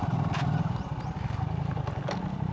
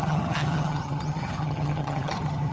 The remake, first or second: second